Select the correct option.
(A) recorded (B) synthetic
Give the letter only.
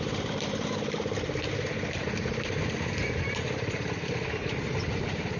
B